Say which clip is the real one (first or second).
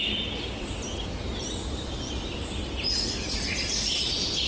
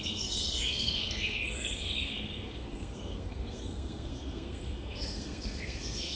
first